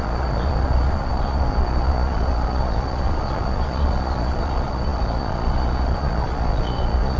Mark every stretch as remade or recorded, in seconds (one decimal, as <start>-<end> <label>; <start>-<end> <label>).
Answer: 0.0-7.2 remade